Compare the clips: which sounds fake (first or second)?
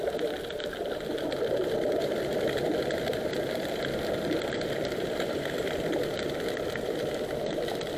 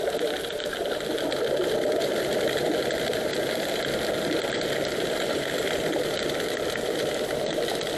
first